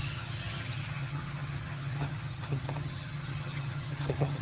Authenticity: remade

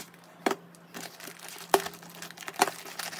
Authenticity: recorded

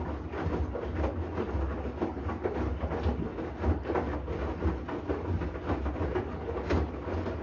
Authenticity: recorded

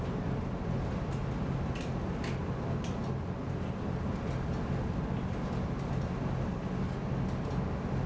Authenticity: recorded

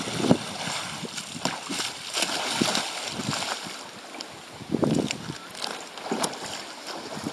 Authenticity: recorded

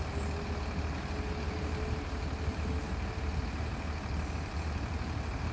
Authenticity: recorded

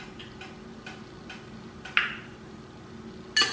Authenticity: recorded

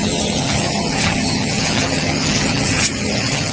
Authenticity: remade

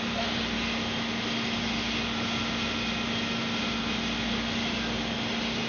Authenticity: recorded